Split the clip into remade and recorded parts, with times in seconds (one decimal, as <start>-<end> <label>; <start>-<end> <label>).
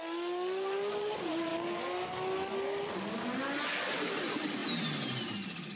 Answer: 0.0-5.8 recorded